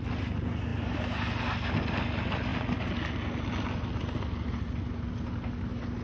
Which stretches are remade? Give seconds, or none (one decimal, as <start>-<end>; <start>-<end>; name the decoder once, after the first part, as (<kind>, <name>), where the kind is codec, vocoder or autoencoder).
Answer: none